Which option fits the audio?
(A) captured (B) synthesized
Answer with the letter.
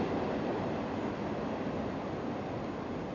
A